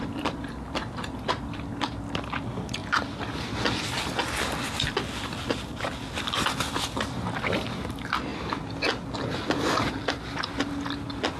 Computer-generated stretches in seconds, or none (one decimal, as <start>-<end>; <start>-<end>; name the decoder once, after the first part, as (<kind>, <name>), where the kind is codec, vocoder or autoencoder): none